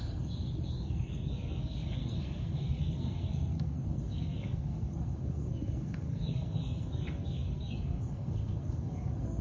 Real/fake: fake